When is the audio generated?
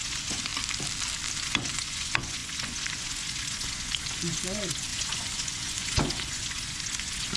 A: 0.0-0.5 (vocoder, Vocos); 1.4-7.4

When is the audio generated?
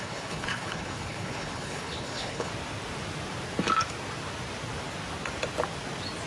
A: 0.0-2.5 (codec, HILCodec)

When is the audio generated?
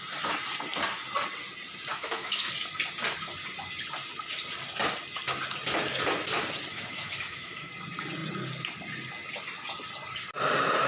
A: 1.9-2.5 (autoencoder, DAC-VAE); 6.7-7.7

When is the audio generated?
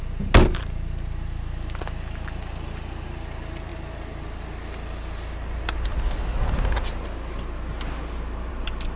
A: none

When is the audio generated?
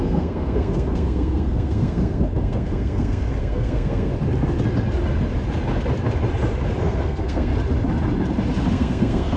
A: 0.0-4.1 (codec, SNAC); 6.8-7.5; 8.7-9.4